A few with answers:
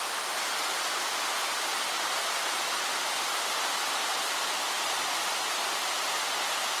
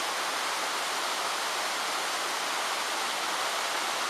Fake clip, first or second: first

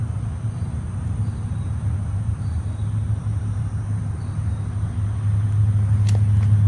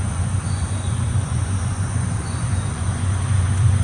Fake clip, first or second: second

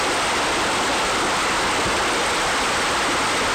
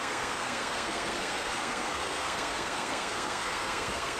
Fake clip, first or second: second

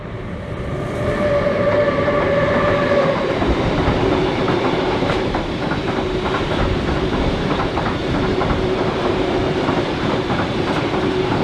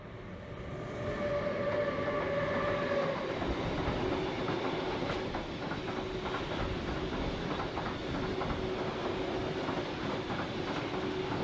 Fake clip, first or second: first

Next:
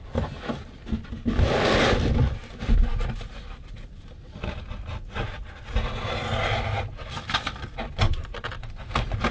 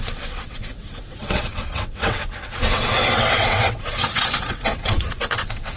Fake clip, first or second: second